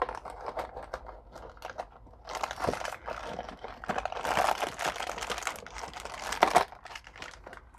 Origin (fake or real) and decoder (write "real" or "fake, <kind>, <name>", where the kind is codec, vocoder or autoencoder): real